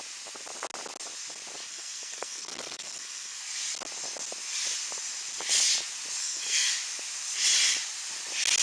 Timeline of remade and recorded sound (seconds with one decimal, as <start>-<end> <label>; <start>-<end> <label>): 0.0-1.7 recorded; 1.7-3.4 remade; 3.4-6.2 recorded; 6.2-6.7 remade; 6.7-8.6 recorded